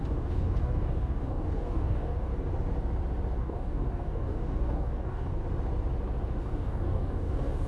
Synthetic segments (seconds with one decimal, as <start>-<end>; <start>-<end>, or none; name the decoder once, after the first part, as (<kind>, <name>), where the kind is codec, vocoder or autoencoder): 0.0-2.3 (codec, DAC); 3.4-5.4; 6.4-7.7